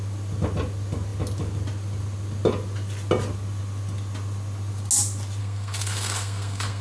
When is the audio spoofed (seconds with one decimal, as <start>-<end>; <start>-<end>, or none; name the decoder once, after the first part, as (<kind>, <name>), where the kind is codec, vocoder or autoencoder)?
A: 5.4-6.8 (codec, SNAC)